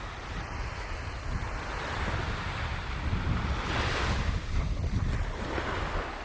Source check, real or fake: real